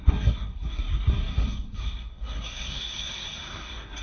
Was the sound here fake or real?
fake